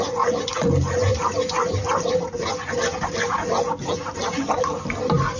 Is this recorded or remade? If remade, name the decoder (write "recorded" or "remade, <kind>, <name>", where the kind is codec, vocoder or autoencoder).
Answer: recorded